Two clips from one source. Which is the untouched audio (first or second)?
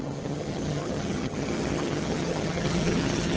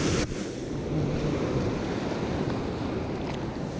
second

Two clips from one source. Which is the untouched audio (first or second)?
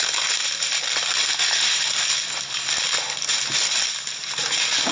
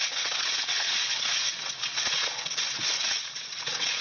first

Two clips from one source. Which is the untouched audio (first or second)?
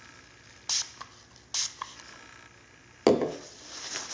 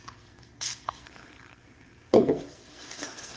first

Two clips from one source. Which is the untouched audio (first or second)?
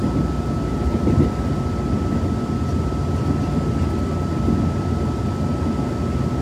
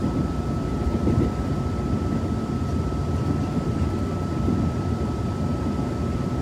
first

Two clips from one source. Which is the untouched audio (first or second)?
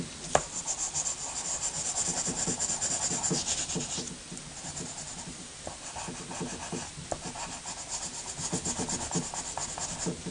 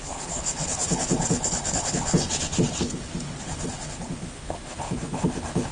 first